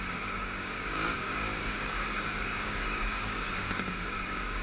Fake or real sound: fake